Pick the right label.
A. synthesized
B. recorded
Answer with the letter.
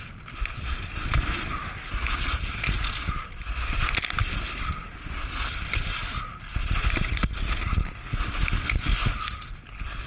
B